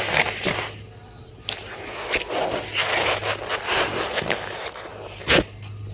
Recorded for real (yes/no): yes